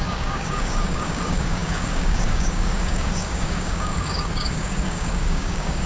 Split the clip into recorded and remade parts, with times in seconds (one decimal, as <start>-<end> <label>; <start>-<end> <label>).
0.0-5.9 remade